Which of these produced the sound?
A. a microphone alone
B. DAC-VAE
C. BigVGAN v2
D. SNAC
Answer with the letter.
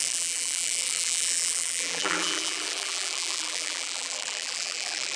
C